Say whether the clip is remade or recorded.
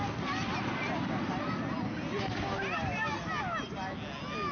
recorded